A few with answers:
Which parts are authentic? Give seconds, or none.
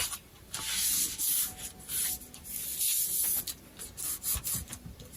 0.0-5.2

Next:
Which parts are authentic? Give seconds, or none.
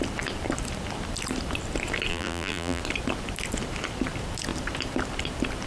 0.0-2.1; 2.8-5.7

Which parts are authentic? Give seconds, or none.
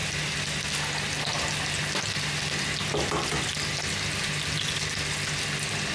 0.0-5.9